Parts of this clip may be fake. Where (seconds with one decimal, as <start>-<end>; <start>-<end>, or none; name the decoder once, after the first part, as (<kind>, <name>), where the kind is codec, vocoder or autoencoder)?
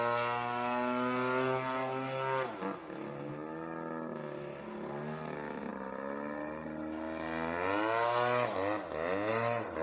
none